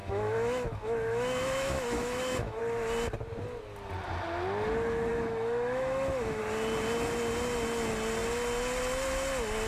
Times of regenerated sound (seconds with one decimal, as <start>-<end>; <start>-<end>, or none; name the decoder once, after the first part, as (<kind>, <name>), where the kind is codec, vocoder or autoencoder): 0.0-2.6 (autoencoder, DAC-VAE); 5.1-6.4